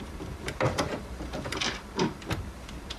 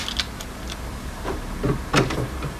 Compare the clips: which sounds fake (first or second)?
first